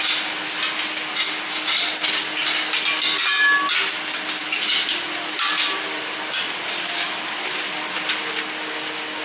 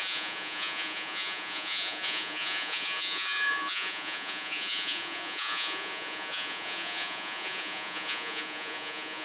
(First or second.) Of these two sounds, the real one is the first